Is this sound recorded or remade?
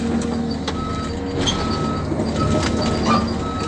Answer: recorded